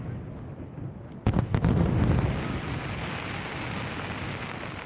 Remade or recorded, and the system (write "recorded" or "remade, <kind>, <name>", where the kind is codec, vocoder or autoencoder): recorded